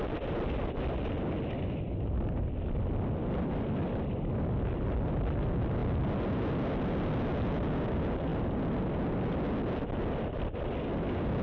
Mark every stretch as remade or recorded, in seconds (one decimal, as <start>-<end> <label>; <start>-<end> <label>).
0.0-11.4 recorded